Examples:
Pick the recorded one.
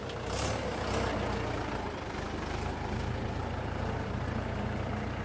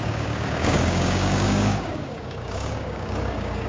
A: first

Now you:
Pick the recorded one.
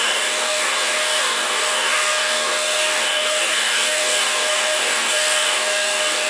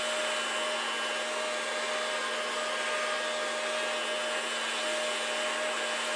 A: second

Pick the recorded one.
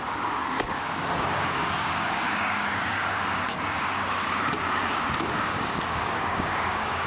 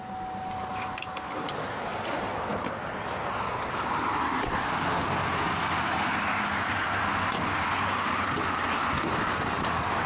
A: second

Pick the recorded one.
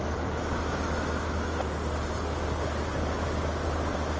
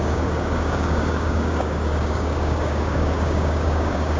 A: first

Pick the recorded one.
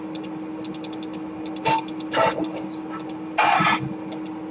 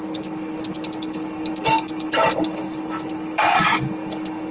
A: first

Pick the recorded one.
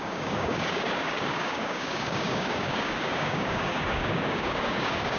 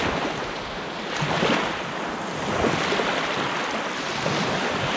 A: second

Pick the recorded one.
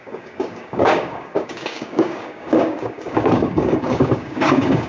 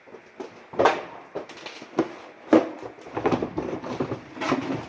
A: second